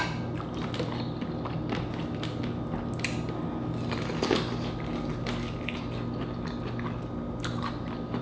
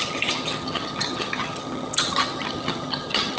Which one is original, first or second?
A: first